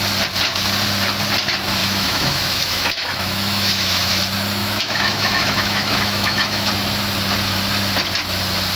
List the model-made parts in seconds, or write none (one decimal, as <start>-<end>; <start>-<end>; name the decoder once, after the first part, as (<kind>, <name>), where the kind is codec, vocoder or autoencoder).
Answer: 1.8-4.1 (autoencoder, DAC-VAE); 4.6-6.7